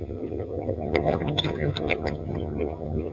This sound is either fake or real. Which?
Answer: fake